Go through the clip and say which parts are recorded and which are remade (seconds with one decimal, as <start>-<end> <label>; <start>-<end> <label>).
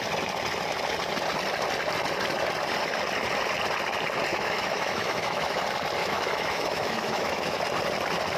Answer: 0.0-4.3 recorded; 4.3-5.6 remade; 5.6-6.0 recorded; 6.0-7.6 remade; 7.6-8.4 recorded